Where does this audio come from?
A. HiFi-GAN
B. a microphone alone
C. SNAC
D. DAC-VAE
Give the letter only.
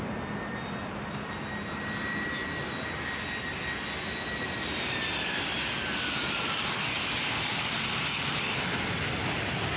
B